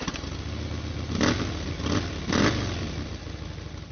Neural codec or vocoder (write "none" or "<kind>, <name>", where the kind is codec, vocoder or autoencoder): none